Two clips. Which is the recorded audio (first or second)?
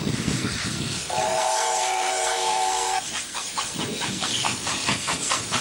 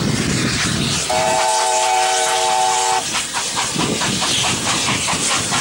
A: second